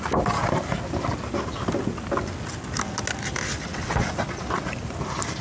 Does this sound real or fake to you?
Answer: real